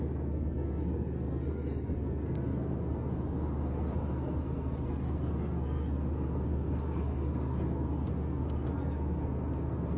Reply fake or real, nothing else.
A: fake